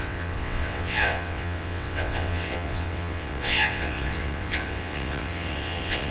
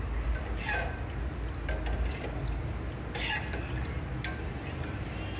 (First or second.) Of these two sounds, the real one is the second